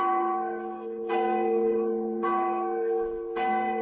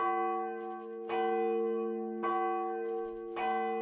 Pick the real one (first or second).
second